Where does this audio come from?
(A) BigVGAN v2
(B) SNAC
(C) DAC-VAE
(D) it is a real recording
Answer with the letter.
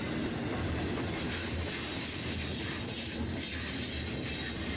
D